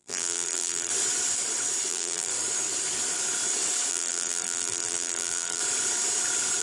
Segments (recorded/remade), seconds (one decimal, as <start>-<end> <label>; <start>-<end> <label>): 0.0-0.9 remade; 0.9-1.9 recorded; 1.9-2.3 remade; 2.3-3.9 recorded; 3.9-5.6 remade; 5.6-6.6 recorded